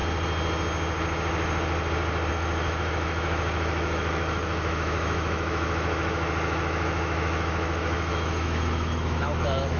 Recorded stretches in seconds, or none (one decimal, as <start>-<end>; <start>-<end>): 0.0-2.3

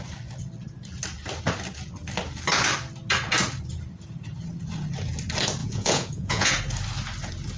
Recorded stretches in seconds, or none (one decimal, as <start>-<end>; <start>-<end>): 0.0-5.6; 6.5-7.6

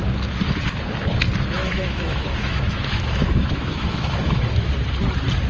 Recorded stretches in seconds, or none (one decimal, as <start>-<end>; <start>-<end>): 0.0-1.6; 4.7-5.5

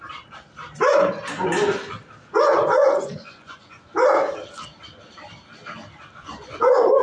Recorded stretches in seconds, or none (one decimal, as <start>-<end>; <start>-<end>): 0.0-2.8; 3.8-6.2

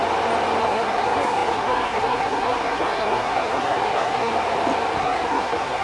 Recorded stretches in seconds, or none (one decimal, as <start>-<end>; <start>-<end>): 0.0-0.6; 4.3-5.0